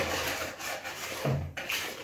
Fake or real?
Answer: fake